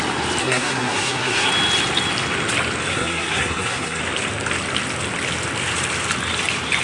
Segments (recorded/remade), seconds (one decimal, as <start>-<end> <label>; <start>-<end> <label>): 0.0-0.4 recorded; 0.4-1.5 remade; 1.5-2.9 recorded; 2.9-4.0 remade; 4.0-6.8 recorded

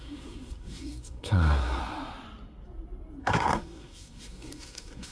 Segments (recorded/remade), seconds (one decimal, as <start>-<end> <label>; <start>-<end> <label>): 0.0-1.8 remade; 1.8-3.2 recorded; 3.2-5.1 remade

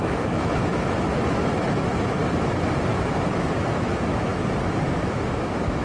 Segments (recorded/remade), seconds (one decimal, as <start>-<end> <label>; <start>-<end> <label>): 0.0-2.2 remade; 2.2-2.9 recorded; 2.9-4.3 remade; 4.3-4.9 recorded; 4.9-5.8 remade

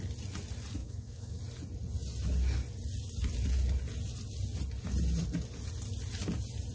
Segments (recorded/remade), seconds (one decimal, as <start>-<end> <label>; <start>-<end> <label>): 0.0-0.8 recorded; 0.8-1.4 remade; 1.4-6.7 recorded

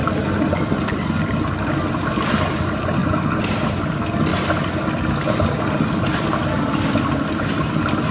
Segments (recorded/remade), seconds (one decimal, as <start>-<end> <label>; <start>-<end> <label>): 0.0-8.1 recorded